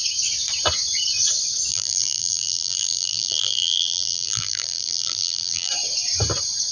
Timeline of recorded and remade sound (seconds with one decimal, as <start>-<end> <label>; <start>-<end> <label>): 0.0-1.7 recorded; 1.7-5.7 remade; 5.7-6.7 recorded